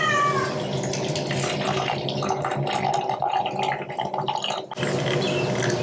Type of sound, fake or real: real